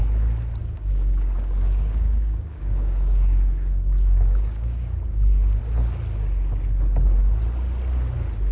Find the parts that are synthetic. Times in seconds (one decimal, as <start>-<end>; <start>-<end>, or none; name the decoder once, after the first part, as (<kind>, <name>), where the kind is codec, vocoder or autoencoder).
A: 0.6-5.6 (codec, DAC)